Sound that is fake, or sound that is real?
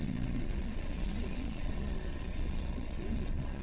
fake